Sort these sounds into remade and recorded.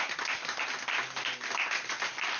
recorded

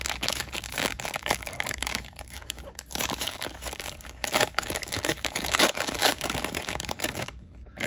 remade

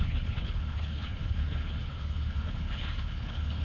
remade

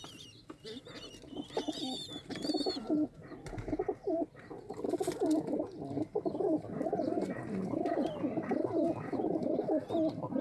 recorded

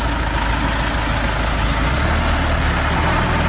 recorded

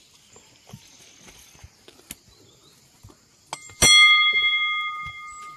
recorded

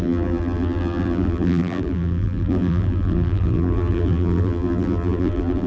remade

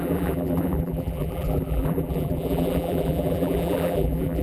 remade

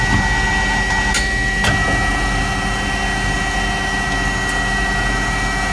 recorded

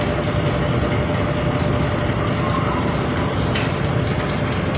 recorded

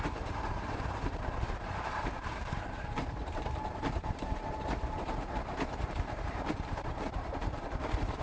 remade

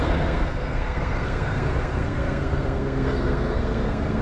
remade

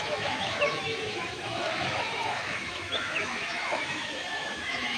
remade